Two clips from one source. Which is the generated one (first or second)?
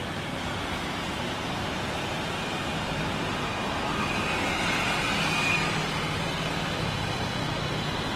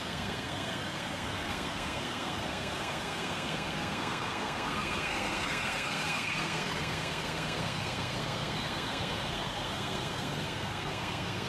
second